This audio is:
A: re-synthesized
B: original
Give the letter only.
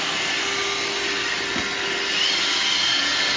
B